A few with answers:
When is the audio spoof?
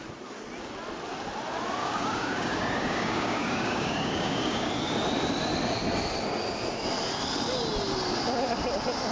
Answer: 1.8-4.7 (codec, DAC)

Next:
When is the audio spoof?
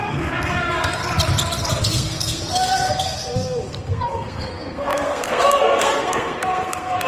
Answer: 0.0-1.0 (codec, SNAC); 1.8-7.1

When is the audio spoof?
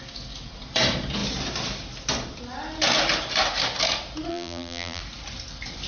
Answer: 4.3-5.0 (vocoder, BigVGAN v2)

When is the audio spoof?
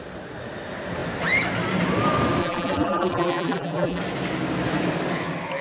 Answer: 2.4-4.0 (vocoder, BigVGAN v2)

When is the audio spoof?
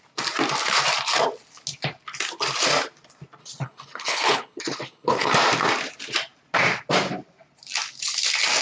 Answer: 3.4-5.3 (codec, HILCodec)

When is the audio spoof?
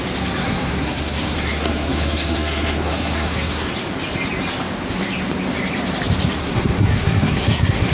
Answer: 0.4-3.7 (codec, SNAC); 6.4-7.9